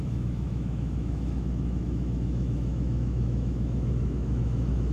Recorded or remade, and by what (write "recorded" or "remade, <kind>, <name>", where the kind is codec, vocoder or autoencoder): remade, autoencoder, DAC-VAE